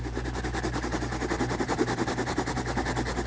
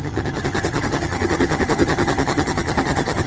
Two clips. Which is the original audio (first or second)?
first